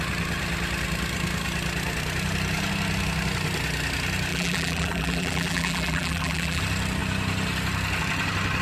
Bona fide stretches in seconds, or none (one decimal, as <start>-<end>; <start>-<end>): 0.0-4.3; 6.6-8.6